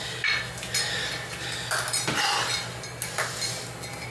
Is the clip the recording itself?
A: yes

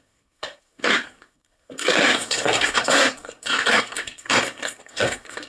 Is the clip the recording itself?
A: no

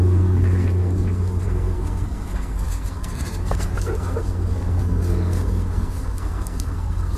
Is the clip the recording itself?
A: no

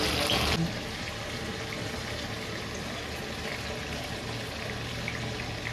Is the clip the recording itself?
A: yes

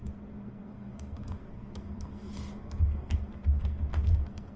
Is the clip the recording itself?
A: no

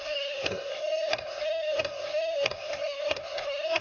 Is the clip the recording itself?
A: no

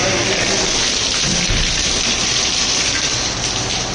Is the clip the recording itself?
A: yes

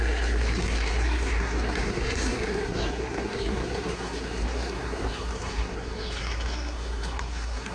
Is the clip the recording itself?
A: no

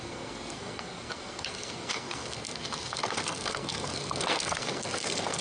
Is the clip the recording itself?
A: no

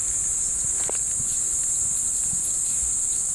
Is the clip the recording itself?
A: yes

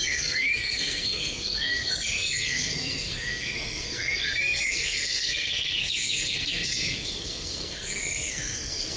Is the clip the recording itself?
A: no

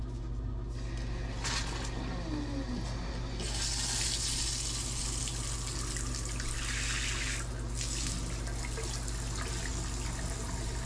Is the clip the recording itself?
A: yes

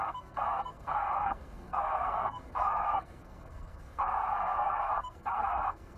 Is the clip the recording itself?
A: no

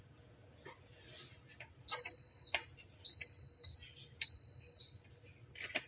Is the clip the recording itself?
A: yes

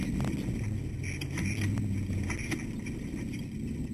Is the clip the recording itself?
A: yes